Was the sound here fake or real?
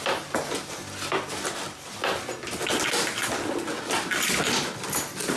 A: real